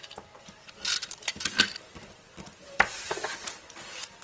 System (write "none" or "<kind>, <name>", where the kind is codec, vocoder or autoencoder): vocoder, BigVGAN v2